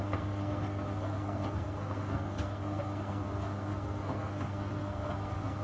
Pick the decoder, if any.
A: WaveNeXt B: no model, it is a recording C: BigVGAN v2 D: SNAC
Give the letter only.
D